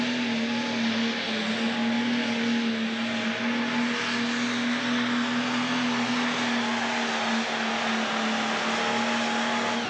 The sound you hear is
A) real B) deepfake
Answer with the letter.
A